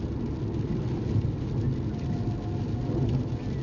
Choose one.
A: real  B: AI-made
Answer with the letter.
A